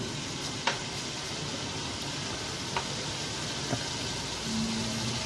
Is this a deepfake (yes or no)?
no